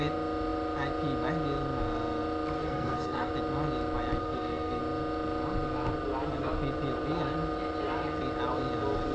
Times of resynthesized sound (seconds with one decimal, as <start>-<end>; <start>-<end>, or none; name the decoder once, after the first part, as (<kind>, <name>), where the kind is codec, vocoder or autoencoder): 2.6-3.3 (codec, SNAC); 4.2-4.8

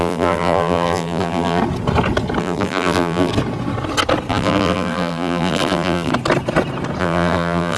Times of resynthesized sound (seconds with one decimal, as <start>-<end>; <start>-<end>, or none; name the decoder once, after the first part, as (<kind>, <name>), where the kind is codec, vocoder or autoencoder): 0.0-1.6 (vocoder, BigVGAN v2); 2.4-3.3; 4.3-6.1; 7.0-7.8

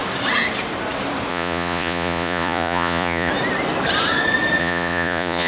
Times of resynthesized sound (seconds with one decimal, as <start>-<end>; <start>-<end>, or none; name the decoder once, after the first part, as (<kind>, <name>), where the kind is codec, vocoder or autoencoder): 1.3-3.3 (vocoder, Vocos); 4.6-5.5

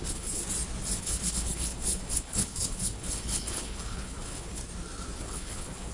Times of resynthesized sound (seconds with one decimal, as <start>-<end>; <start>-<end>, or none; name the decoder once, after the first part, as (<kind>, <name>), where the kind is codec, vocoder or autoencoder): 0.0-0.4 (codec, HILCodec); 1.0-4.6; 5.2-5.9

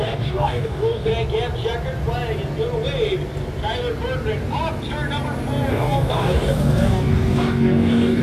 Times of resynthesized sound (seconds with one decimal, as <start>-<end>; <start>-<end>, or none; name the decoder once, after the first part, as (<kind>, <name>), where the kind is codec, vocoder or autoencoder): 0.0-1.1 (codec, DAC); 5.7-8.2

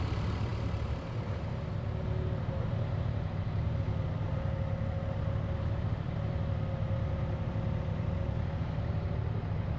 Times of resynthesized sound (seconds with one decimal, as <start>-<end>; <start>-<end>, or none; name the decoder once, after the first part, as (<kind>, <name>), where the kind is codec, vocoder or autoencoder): none